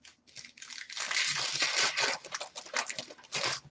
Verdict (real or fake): real